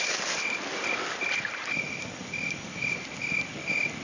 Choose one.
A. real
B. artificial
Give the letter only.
A